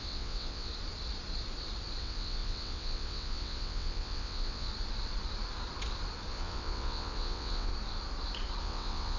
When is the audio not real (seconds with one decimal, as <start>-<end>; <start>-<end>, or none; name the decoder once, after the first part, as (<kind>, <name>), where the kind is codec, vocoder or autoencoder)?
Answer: 0.0-0.7 (vocoder, WaveNeXt); 2.0-4.7; 6.3-7.7; 8.6-9.2